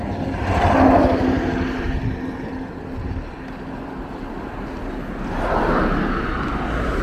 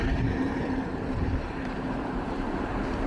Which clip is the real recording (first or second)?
first